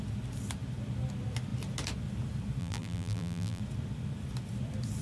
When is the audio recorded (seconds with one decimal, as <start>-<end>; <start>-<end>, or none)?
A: 0.0-2.6; 3.6-5.0